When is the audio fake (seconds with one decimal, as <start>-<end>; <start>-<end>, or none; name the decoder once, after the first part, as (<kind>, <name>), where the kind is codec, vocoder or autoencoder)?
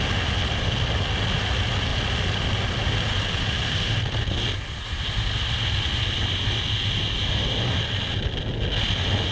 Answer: none